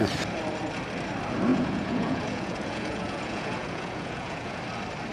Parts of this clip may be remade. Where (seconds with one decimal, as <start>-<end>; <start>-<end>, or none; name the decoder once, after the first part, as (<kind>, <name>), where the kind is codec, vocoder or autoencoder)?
1.5-4.6 (vocoder, Vocos)

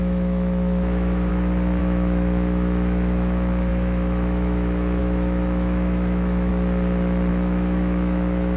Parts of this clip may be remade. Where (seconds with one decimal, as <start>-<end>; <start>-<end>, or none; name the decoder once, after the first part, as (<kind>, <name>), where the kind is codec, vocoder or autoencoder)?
0.0-1.3 (autoencoder, DAC-VAE); 1.8-6.5; 7.3-8.6

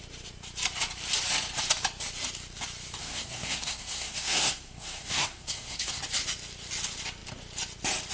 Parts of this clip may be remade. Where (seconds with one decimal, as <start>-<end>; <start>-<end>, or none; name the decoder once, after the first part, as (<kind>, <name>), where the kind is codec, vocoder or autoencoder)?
3.0-6.0 (codec, SNAC)

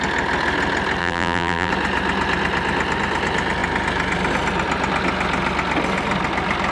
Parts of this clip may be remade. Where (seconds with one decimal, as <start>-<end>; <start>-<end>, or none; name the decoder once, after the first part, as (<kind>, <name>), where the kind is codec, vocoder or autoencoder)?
1.0-1.7 (vocoder, BigVGAN v2)

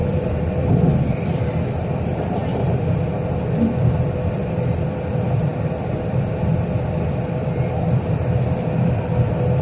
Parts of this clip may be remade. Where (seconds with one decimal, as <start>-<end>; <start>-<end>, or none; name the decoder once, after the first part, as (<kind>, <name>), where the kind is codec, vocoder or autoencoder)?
0.0-2.4 (vocoder, BigVGAN v2); 4.3-9.6

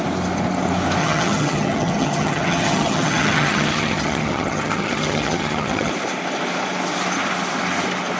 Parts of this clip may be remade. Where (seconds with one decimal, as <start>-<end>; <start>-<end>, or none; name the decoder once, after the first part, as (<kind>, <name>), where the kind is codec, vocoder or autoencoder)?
1.0-5.9 (vocoder, HiFi-GAN)